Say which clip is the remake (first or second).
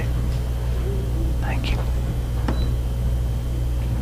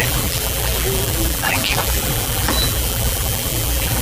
second